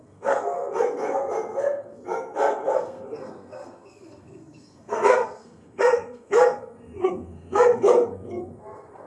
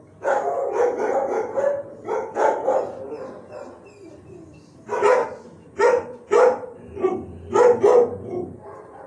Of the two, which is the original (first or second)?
second